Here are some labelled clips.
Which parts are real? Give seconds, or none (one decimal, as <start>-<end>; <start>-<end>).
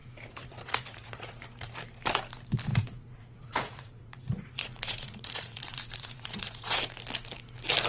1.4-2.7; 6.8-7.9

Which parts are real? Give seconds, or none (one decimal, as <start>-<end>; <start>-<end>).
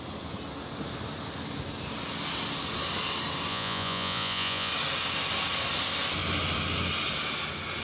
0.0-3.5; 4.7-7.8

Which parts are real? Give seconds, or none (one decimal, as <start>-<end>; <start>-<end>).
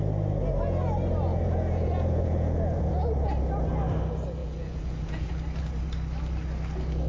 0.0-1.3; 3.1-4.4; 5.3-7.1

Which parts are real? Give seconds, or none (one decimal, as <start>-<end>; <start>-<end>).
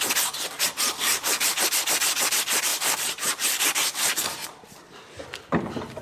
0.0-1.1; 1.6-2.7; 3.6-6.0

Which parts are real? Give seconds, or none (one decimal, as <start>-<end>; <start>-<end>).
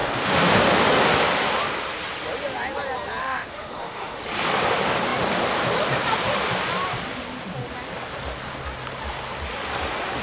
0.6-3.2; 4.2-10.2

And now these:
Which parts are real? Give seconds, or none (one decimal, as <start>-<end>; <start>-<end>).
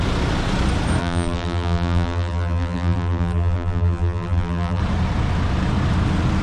0.0-1.0; 4.8-6.4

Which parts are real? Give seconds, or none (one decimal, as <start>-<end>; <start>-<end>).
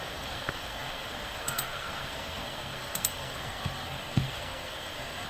none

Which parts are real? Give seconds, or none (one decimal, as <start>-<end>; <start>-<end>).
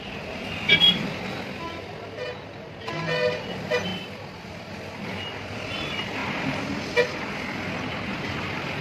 0.0-8.8